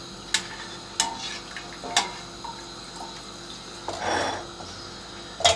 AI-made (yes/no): no